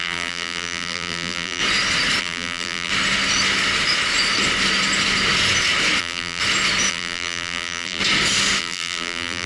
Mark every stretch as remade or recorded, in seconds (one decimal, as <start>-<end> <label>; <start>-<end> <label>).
0.0-1.6 remade; 1.6-2.2 recorded; 2.2-2.9 remade; 2.9-6.0 recorded; 6.0-6.4 remade; 6.4-6.9 recorded; 6.9-8.0 remade; 8.0-8.6 recorded; 8.6-9.5 remade

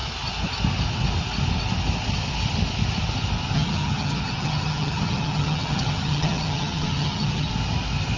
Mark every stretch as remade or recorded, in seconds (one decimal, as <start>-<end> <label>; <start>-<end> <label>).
0.0-3.5 recorded; 3.5-7.5 remade; 7.5-8.2 recorded

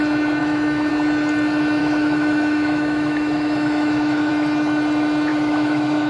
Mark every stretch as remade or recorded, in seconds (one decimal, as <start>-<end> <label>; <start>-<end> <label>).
0.0-0.4 recorded; 0.4-0.9 remade; 0.9-1.8 recorded; 1.8-4.3 remade; 4.3-5.3 recorded; 5.3-6.1 remade

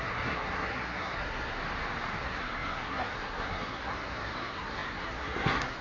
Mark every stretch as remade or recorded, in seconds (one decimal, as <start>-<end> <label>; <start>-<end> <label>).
0.0-1.6 remade; 1.6-2.2 recorded; 2.2-5.8 remade

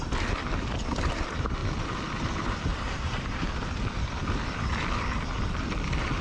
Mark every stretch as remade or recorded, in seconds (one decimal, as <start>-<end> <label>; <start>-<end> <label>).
0.0-2.7 recorded; 2.7-3.5 remade; 3.5-6.2 recorded

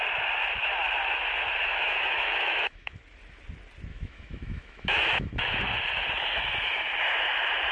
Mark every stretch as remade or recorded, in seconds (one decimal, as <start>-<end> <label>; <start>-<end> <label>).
0.0-1.7 recorded; 1.7-3.0 remade; 3.0-3.9 recorded; 3.9-5.6 remade; 5.6-7.7 recorded